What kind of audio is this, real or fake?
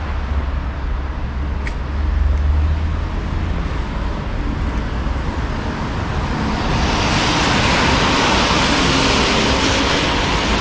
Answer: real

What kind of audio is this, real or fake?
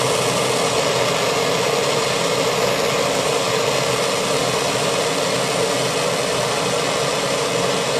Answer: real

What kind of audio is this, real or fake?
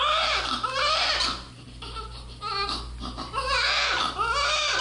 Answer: real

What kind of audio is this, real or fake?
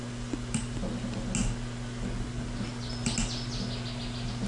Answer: real